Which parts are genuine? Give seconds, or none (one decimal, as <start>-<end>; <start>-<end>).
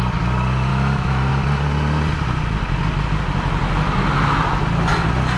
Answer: 0.0-0.7; 1.3-5.4